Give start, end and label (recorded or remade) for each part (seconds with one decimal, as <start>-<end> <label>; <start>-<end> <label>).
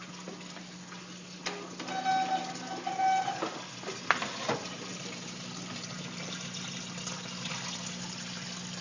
0.0-8.8 recorded